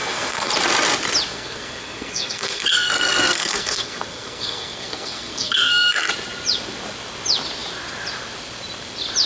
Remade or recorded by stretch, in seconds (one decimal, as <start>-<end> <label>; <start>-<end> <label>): 0.0-0.5 remade; 0.5-1.3 recorded; 1.3-6.1 remade; 6.1-9.3 recorded